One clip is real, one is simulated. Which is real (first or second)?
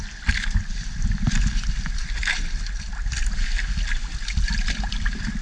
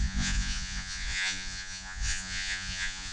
first